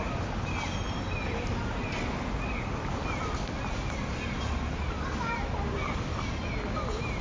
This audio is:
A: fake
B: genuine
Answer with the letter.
B